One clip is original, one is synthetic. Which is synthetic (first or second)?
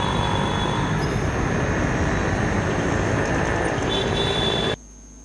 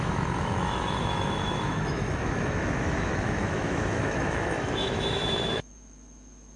second